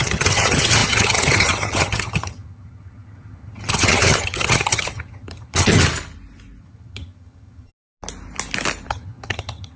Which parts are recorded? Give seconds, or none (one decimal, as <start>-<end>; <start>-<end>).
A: 5.8-6.6; 7.7-8.9